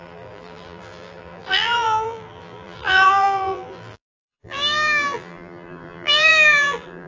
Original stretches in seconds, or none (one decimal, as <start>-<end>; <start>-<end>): none